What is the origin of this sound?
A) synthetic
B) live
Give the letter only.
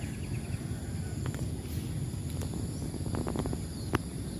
B